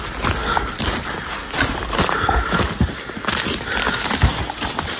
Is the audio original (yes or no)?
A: yes